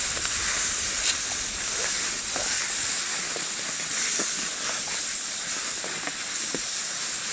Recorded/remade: recorded